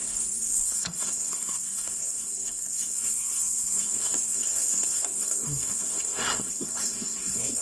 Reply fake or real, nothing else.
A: fake